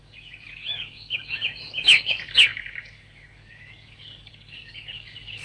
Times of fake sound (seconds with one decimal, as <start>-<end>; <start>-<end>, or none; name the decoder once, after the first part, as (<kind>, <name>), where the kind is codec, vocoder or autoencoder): 0.0-5.4 (codec, DAC)